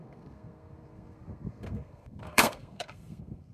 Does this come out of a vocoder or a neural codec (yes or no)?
yes